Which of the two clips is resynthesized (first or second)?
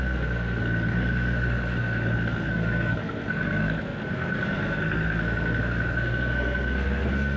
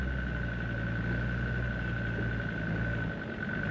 first